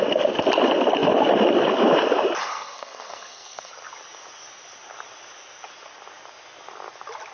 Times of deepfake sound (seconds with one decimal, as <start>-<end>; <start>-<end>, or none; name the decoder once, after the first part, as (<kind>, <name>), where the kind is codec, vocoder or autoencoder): 2.4-3.7 (codec, SNAC)